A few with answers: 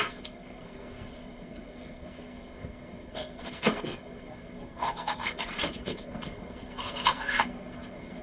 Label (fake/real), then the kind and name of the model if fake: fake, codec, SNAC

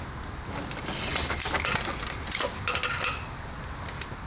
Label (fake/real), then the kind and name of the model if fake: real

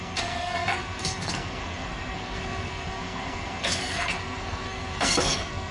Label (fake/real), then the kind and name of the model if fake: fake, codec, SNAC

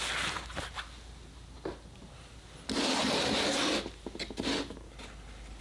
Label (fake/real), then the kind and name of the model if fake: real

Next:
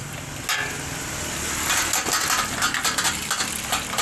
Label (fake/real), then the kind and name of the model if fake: real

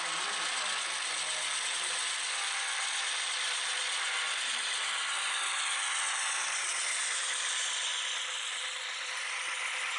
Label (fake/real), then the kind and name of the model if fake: real